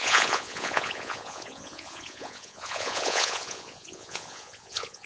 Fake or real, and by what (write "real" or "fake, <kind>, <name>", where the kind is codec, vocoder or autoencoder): fake, vocoder, Vocos